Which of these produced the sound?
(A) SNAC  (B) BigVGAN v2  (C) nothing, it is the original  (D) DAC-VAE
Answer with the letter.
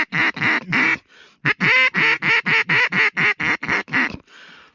C